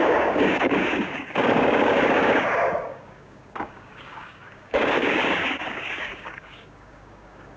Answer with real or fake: fake